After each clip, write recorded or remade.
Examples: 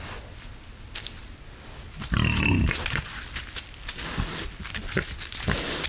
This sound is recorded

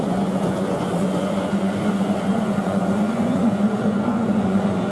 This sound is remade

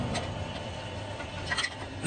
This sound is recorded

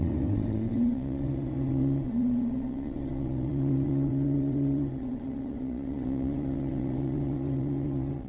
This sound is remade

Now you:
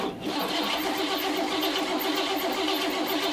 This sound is recorded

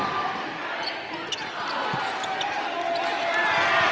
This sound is recorded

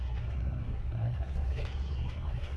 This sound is remade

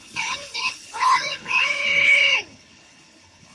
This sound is remade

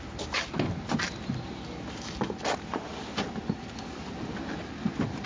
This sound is recorded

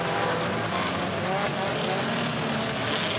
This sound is recorded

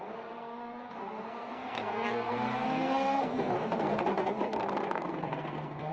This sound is remade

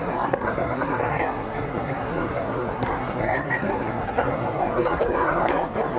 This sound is remade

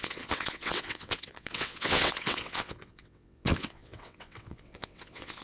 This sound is remade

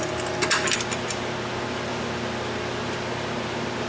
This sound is recorded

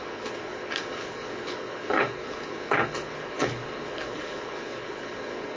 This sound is remade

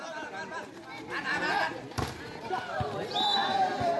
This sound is remade